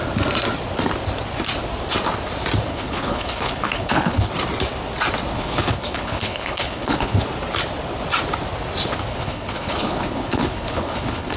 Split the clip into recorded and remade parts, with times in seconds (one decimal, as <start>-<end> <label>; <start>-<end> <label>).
0.0-2.7 recorded; 2.7-4.3 remade; 4.3-5.3 recorded; 5.3-7.2 remade; 7.2-9.1 recorded; 9.1-11.4 remade